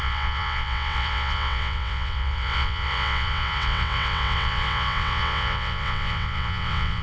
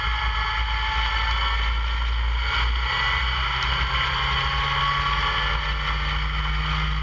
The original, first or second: second